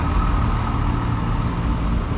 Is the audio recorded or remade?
recorded